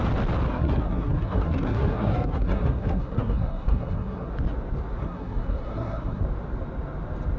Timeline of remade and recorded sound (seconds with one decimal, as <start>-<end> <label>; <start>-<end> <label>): 0.0-0.5 recorded; 0.5-4.3 remade; 4.3-5.0 recorded; 5.0-6.2 remade; 6.2-7.4 recorded